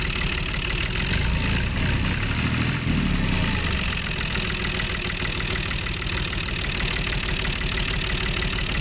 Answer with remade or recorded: recorded